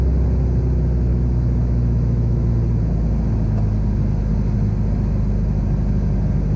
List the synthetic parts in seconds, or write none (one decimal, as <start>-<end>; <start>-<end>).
1.1-2.5